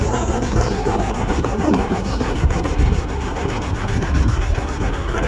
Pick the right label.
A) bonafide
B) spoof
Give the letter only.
B